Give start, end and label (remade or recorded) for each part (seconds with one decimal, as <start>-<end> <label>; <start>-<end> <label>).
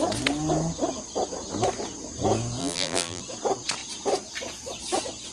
0.0-2.6 recorded; 2.6-3.2 remade; 3.2-5.3 recorded